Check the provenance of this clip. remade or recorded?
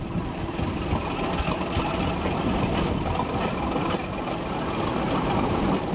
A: recorded